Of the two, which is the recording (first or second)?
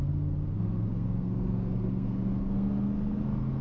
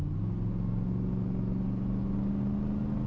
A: second